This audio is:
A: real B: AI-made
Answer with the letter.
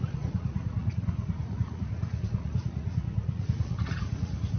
B